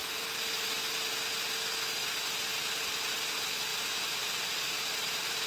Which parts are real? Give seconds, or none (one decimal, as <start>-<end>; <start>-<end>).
0.6-3.7; 4.8-5.5